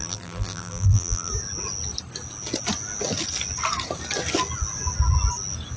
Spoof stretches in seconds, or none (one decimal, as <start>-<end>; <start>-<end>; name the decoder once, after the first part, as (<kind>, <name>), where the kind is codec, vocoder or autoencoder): 0.0-1.3 (vocoder, BigVGAN v2)

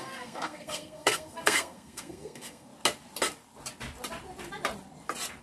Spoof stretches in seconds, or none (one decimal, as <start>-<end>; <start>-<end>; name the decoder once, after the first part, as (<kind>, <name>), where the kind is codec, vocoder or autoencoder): 0.0-2.7 (codec, SNAC)

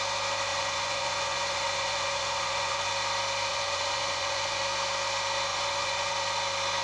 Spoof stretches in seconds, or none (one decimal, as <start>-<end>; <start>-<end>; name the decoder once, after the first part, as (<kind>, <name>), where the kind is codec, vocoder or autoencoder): 0.5-2.9 (vocoder, Vocos); 3.5-4.6; 5.5-6.1

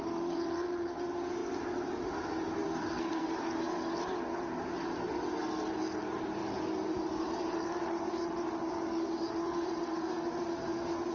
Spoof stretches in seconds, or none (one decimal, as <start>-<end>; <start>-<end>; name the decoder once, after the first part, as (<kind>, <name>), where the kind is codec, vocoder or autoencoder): 2.8-3.3 (codec, SNAC)

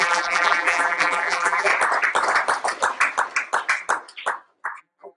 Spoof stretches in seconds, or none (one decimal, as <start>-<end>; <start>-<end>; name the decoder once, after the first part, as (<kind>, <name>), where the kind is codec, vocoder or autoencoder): 0.0-1.7 (vocoder, BigVGAN v2); 4.8-5.2

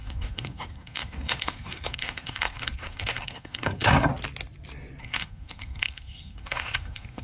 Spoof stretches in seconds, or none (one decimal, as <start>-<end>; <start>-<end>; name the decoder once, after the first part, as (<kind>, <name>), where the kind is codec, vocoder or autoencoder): 0.0-4.1 (codec, SNAC); 5.0-7.2

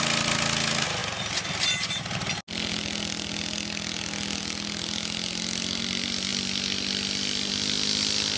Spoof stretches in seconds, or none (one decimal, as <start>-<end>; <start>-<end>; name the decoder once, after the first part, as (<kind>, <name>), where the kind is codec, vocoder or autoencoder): none

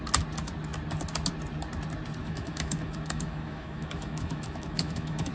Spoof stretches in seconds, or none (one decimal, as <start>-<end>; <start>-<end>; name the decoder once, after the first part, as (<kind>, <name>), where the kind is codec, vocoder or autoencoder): 2.2-5.3 (autoencoder, DAC-VAE)